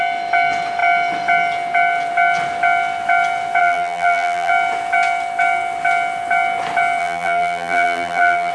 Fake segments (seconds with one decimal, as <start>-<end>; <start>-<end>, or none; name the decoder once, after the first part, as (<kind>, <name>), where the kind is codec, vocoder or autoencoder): 3.6-4.5 (vocoder, BigVGAN v2); 7.0-8.5